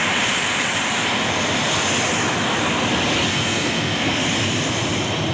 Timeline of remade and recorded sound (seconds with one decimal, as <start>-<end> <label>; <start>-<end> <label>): 0.0-3.3 recorded; 3.3-4.1 remade; 4.1-5.3 recorded